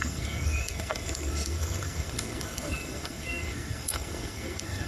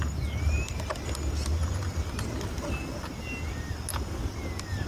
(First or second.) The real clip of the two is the second